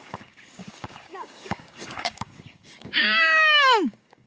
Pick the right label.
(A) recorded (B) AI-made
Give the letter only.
B